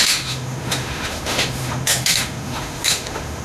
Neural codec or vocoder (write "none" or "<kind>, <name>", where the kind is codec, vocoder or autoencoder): autoencoder, DAC-VAE